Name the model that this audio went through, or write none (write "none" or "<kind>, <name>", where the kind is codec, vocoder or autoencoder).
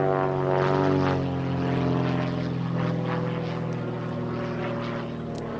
none